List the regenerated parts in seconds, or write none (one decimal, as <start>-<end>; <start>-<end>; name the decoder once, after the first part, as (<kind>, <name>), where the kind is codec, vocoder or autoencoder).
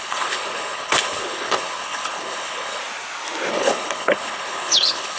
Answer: 0.0-2.8 (codec, HILCodec); 3.5-5.2